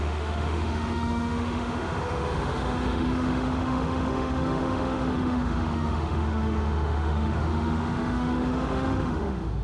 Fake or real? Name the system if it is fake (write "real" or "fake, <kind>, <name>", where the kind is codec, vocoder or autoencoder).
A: fake, autoencoder, DAC-VAE